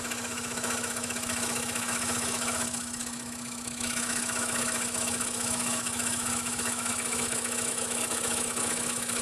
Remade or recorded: remade